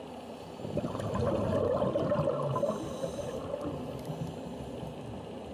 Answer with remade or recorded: recorded